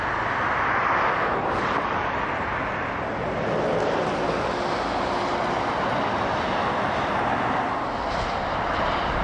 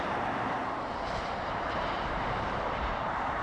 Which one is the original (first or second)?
first